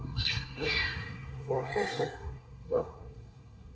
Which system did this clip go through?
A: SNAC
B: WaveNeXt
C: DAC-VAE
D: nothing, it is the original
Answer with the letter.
A